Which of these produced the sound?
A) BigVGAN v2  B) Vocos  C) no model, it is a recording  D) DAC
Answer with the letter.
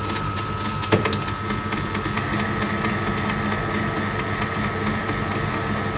C